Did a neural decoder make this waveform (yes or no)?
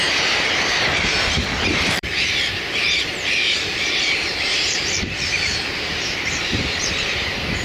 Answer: yes